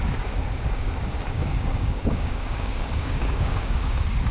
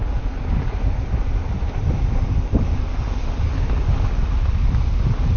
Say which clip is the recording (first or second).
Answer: second